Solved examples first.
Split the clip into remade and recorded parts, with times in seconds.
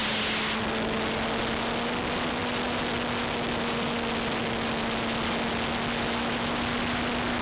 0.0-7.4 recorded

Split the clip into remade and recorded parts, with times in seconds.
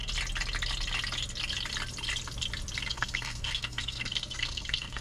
0.0-2.9 recorded; 2.9-5.0 remade